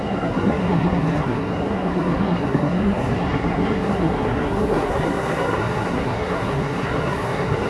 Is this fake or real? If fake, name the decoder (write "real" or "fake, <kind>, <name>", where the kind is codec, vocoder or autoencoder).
fake, codec, SNAC